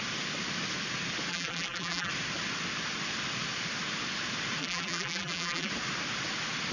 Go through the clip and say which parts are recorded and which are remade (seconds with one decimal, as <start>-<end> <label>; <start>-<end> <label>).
0.0-1.3 recorded; 1.3-2.1 remade; 2.1-4.6 recorded; 4.6-5.7 remade; 5.7-6.7 recorded